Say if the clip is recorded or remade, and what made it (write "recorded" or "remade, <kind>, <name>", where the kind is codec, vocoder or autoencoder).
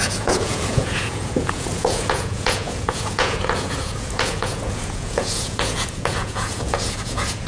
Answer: remade, vocoder, Vocos